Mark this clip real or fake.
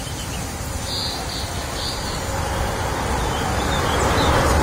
real